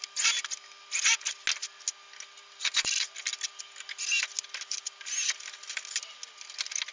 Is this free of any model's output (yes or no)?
yes